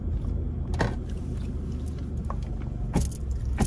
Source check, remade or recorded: recorded